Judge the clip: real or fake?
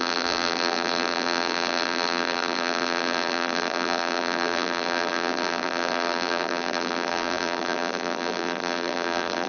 fake